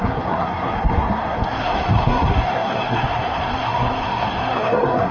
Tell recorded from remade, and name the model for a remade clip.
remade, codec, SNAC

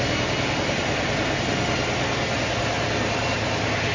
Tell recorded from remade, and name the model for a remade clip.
recorded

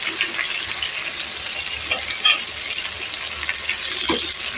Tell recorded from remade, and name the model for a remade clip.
recorded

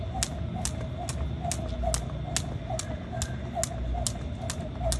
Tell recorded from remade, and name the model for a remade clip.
recorded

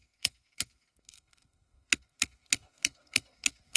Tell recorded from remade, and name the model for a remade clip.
remade, codec, SNAC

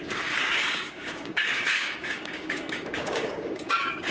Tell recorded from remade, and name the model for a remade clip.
remade, codec, DAC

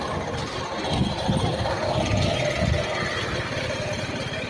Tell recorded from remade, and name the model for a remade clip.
recorded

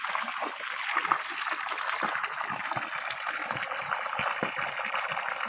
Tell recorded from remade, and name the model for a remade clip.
recorded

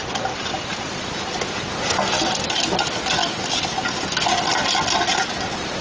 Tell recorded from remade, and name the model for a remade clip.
recorded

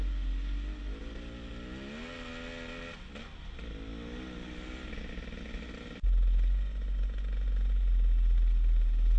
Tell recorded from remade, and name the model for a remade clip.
recorded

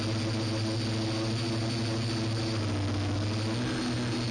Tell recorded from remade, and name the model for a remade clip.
recorded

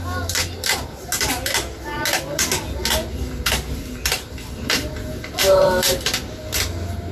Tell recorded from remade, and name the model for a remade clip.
recorded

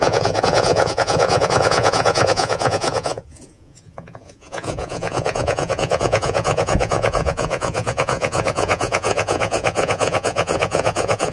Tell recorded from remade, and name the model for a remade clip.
remade, vocoder, Vocos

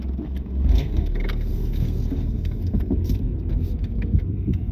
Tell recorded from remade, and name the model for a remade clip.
remade, codec, SNAC